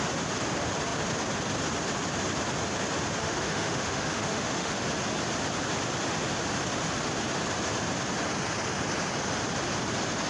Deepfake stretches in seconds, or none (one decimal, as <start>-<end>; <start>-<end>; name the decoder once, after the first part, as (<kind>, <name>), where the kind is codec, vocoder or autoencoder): 3.2-4.7 (autoencoder, DAC-VAE)